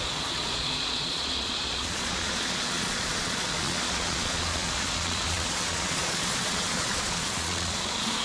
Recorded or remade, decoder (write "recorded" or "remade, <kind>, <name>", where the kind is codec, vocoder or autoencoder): remade, vocoder, Vocos